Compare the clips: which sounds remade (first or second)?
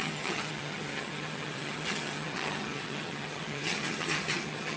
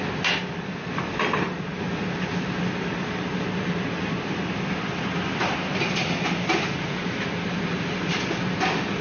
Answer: first